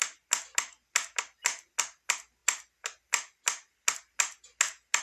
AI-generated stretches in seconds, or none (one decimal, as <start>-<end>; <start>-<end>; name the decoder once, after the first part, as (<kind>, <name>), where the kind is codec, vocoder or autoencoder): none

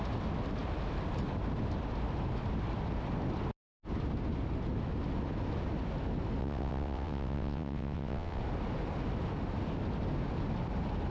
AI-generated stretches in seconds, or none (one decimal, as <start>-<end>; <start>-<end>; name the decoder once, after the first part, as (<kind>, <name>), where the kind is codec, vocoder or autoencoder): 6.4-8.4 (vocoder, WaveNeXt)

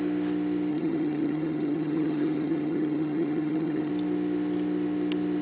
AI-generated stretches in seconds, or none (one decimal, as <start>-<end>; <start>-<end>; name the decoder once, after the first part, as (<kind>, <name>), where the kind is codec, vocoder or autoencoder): 0.7-3.9 (vocoder, HiFi-GAN)

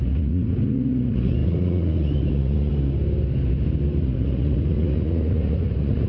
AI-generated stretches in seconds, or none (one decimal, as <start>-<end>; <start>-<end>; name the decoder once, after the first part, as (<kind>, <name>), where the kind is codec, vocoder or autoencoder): 0.0-2.7 (vocoder, Vocos); 4.0-6.1